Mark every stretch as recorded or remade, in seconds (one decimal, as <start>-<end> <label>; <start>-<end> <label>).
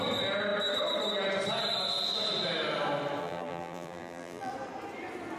0.0-3.2 recorded; 3.2-4.5 remade; 4.5-5.4 recorded